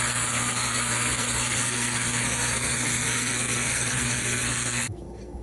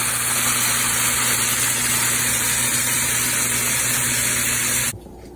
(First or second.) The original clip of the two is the second